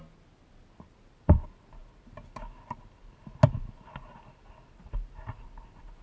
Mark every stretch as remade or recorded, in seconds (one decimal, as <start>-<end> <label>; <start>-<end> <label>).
0.0-6.0 recorded